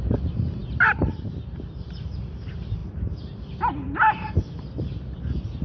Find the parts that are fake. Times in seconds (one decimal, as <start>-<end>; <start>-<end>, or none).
none